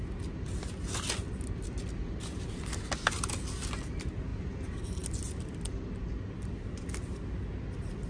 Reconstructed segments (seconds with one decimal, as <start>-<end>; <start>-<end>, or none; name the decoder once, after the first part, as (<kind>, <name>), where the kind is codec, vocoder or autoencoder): none